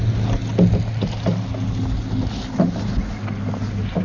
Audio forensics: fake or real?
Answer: real